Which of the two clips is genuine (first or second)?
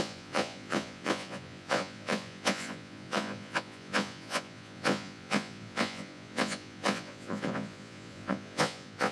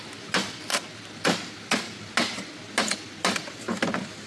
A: second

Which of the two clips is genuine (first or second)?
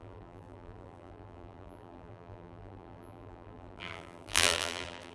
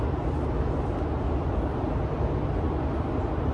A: second